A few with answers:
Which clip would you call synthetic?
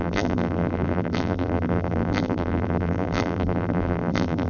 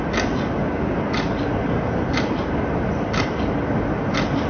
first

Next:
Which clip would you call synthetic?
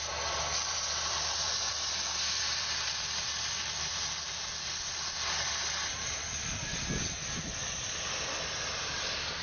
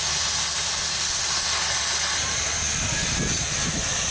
first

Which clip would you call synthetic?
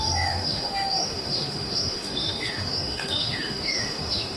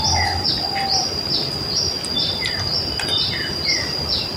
first